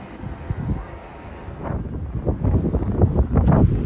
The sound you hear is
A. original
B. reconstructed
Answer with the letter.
A